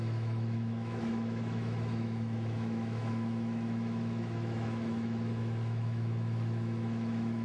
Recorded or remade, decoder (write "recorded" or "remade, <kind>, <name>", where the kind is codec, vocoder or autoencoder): remade, autoencoder, DAC-VAE